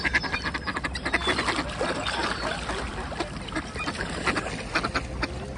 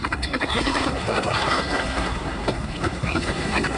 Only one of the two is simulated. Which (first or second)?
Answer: second